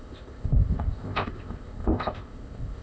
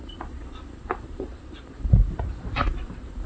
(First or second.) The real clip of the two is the second